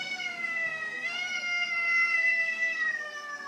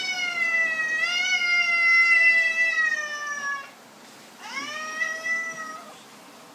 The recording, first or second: second